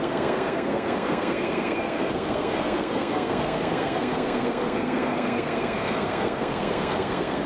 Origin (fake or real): fake